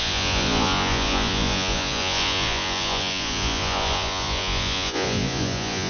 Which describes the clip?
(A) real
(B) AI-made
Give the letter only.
B